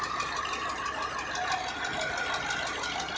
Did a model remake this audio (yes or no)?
no